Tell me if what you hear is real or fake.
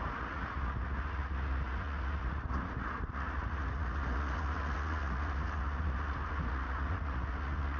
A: fake